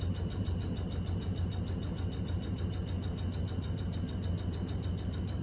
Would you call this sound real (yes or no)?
yes